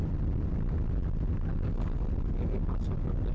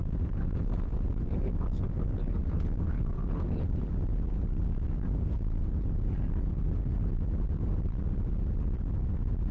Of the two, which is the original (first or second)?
first